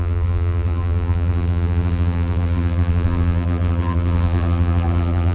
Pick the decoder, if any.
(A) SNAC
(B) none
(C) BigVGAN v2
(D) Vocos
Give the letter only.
C